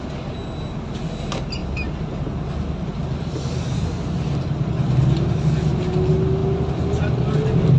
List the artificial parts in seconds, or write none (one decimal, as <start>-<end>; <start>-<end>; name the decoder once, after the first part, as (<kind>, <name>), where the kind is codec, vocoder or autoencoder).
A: 0.4-0.9 (vocoder, BigVGAN v2)